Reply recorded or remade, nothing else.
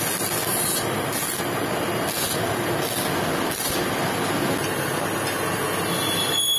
recorded